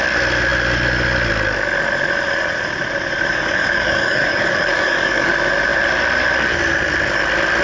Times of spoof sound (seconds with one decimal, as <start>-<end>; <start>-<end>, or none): 3.3-5.3